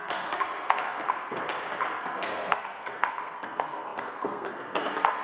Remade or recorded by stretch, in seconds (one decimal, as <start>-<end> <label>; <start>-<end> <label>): 0.0-1.4 remade; 1.4-2.0 recorded; 2.0-5.2 remade